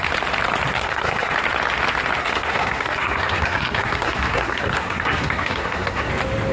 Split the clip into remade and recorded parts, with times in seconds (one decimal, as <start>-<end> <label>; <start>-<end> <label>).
0.0-0.7 recorded; 0.7-1.3 remade; 1.3-2.2 recorded; 2.2-6.1 remade; 6.1-6.5 recorded